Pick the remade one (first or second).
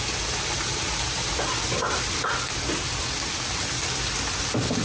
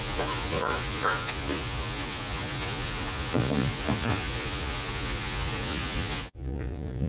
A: second